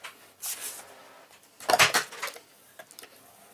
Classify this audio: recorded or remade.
recorded